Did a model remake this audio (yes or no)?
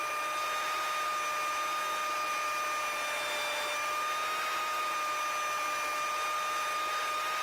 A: no